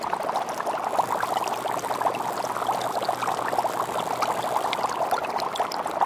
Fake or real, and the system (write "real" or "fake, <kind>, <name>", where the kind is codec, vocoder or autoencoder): real